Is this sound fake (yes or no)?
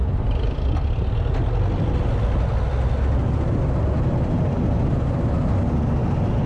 no